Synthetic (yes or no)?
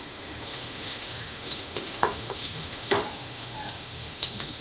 yes